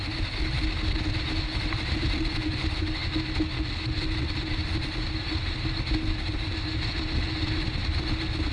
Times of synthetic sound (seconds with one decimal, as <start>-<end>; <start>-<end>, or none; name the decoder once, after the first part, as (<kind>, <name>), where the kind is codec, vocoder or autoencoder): none